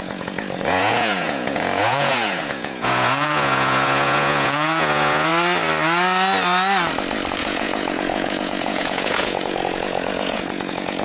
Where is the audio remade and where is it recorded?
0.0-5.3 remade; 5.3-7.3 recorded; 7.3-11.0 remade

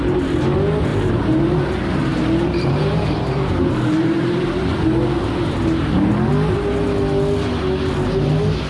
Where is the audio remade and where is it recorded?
0.0-0.9 recorded; 0.9-1.7 remade; 1.7-2.1 recorded; 2.1-6.3 remade; 6.3-8.7 recorded

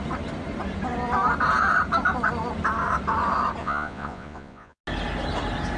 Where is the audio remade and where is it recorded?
0.0-3.6 recorded; 3.6-4.8 remade; 4.8-5.8 recorded

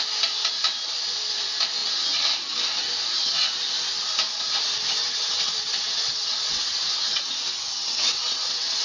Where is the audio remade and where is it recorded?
0.0-5.0 recorded; 5.0-7.3 remade; 7.3-7.8 recorded; 7.8-8.8 remade

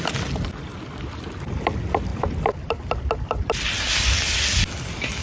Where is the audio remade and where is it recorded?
0.0-5.2 recorded